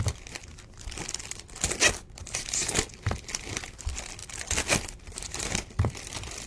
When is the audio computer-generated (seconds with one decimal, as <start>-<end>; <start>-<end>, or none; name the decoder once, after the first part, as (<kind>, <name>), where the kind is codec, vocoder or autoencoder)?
4.2-6.5 (vocoder, BigVGAN v2)

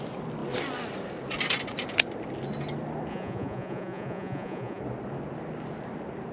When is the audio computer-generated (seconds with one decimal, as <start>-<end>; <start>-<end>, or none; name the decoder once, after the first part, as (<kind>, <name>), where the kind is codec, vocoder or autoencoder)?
3.1-4.8 (vocoder, Vocos)

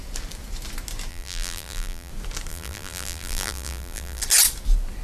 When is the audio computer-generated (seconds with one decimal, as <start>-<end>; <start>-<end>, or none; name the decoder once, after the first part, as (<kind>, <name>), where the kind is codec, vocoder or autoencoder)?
1.1-2.1 (vocoder, BigVGAN v2); 2.5-4.2